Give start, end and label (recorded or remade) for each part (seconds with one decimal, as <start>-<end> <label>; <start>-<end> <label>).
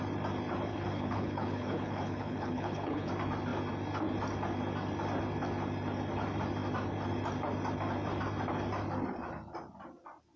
0.0-0.7 recorded; 0.7-3.1 remade; 3.1-10.4 recorded